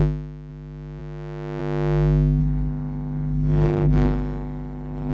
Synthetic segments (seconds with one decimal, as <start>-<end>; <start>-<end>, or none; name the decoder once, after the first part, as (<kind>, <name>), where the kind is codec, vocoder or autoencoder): 2.4-5.1 (codec, HILCodec)